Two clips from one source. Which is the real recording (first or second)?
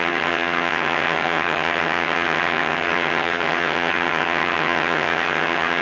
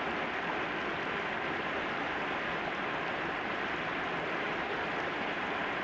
second